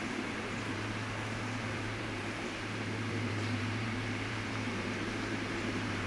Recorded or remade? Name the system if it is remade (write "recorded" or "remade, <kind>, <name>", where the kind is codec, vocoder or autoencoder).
remade, vocoder, BigVGAN v2